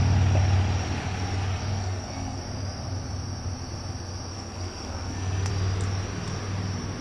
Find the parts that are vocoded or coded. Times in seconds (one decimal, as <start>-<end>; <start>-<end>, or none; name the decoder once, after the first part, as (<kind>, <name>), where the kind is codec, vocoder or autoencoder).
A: 1.7-2.4 (codec, SNAC); 4.3-5.5